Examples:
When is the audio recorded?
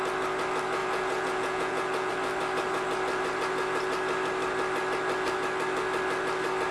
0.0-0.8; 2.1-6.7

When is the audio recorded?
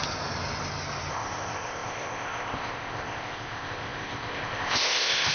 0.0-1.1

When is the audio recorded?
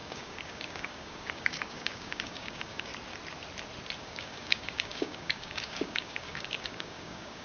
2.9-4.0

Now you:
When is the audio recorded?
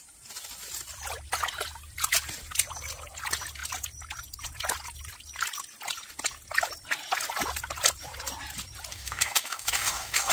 0.0-8.9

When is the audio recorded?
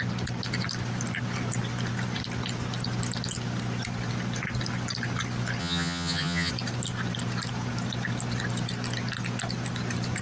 0.0-5.6; 6.5-10.2